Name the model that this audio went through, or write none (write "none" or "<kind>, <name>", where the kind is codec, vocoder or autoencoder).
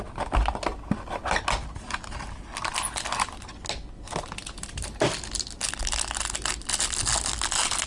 none